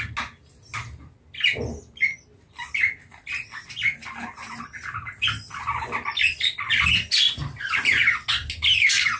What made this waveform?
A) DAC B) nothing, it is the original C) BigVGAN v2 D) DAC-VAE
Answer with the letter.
B